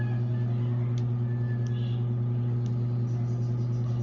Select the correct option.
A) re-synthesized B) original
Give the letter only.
B